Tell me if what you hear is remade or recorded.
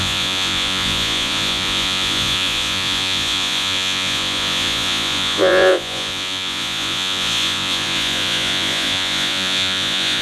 remade